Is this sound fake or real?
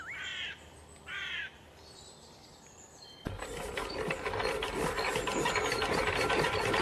fake